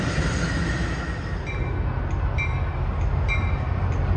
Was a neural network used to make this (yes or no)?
no